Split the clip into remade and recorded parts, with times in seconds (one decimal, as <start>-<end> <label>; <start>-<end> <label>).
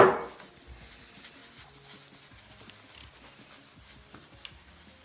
0.0-5.0 recorded